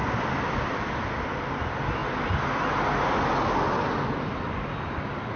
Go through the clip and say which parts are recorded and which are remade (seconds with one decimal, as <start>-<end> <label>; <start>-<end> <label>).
0.0-5.4 recorded